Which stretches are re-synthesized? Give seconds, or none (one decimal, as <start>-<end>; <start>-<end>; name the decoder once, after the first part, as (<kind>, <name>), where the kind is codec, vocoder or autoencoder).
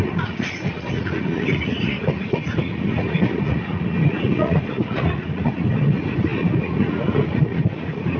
0.0-8.2 (vocoder, Vocos)